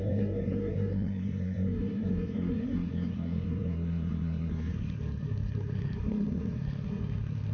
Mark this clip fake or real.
fake